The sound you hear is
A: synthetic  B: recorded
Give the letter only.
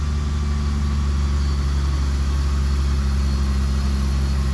B